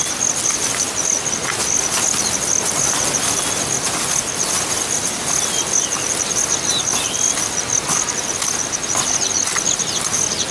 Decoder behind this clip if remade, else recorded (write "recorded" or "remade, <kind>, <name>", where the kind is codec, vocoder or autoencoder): recorded